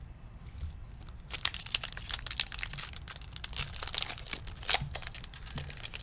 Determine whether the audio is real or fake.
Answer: real